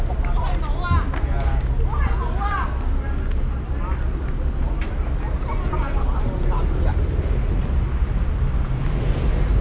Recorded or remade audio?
recorded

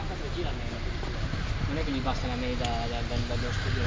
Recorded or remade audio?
recorded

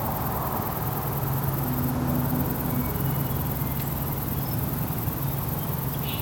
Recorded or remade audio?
recorded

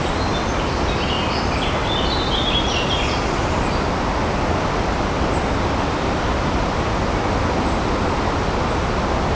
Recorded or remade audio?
recorded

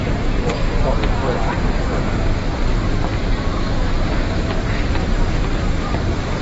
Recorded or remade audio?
remade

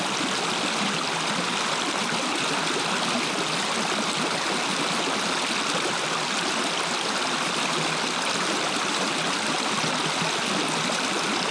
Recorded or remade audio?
recorded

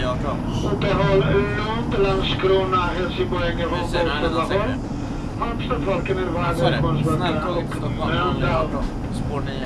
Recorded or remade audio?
recorded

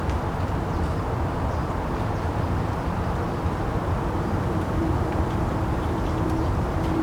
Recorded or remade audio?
remade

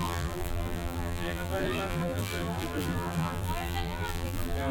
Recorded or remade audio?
remade